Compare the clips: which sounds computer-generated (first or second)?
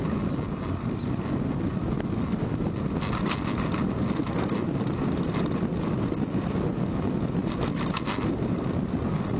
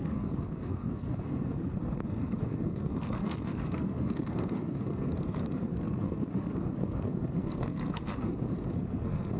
second